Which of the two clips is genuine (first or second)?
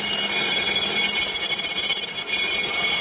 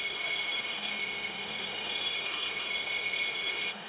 first